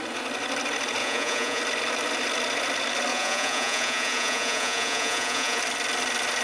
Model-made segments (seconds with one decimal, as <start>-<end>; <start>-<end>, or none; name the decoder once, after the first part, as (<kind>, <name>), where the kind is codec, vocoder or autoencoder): 1.0-1.6 (vocoder, Vocos); 3.1-5.6